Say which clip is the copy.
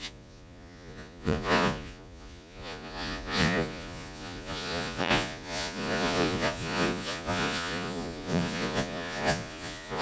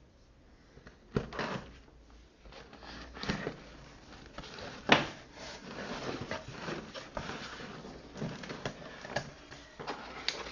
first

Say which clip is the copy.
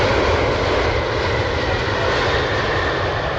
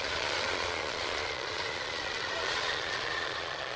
second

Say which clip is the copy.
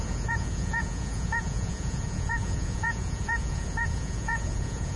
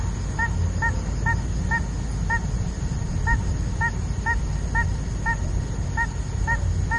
first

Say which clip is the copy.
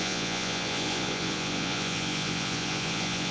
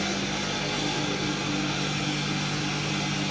first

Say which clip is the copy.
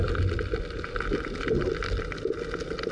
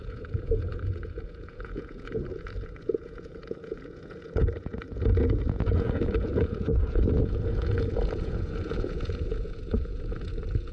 second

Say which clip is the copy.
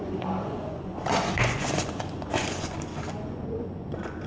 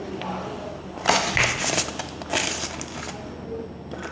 first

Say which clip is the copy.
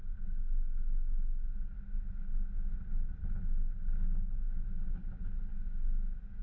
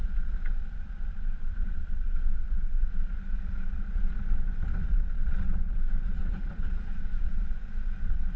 second